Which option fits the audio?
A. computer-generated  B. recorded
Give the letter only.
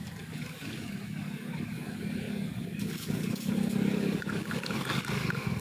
A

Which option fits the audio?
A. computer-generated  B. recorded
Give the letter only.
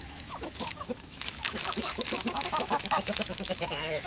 A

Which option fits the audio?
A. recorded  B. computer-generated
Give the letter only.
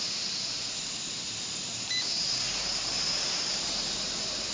B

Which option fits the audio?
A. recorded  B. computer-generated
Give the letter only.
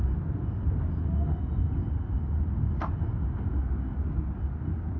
A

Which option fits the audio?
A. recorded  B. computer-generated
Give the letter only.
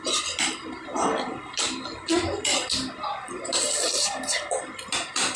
A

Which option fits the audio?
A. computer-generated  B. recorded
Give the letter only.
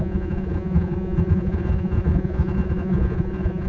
A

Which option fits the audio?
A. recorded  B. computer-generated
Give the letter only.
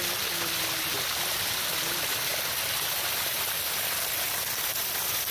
A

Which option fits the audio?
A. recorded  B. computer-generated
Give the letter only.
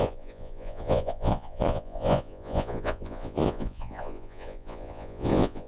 B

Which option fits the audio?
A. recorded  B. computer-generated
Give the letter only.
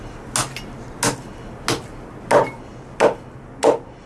A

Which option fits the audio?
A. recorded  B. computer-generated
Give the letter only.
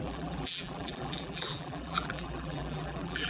B